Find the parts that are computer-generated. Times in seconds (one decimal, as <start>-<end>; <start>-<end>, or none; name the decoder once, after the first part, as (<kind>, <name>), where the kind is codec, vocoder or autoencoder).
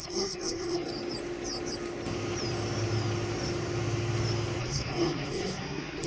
0.0-0.9 (codec, SNAC); 4.6-6.1